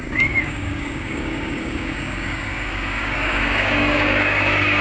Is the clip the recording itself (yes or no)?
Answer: no